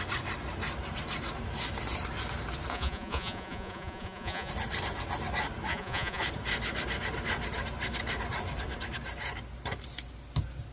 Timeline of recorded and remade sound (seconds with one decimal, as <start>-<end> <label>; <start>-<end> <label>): 0.0-2.7 recorded; 2.7-4.5 remade; 4.5-5.7 recorded; 5.7-6.2 remade; 6.2-10.7 recorded